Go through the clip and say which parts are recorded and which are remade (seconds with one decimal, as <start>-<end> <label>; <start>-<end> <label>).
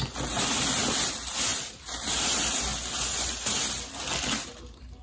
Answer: 0.0-5.0 recorded